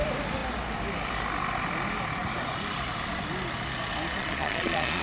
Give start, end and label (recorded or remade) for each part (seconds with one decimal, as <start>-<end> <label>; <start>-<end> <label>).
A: 0.0-4.2 recorded; 4.2-5.0 remade